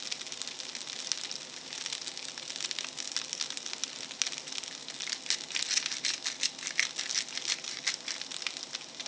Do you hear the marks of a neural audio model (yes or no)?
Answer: no